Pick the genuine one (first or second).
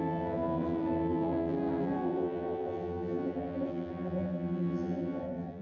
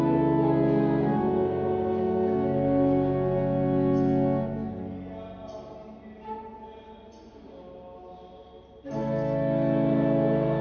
second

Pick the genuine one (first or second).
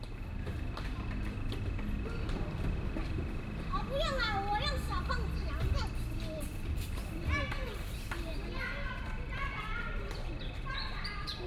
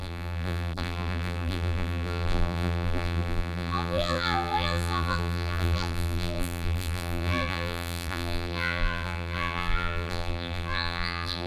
first